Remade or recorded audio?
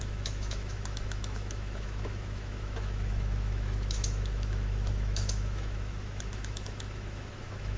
remade